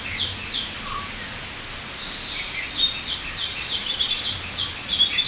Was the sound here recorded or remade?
recorded